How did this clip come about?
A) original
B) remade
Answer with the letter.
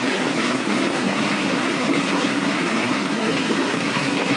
B